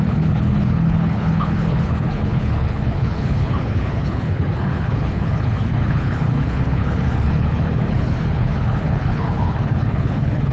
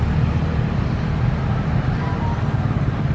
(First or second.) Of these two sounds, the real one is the second